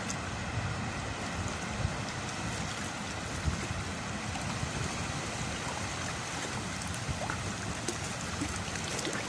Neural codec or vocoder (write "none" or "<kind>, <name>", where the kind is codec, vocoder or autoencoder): none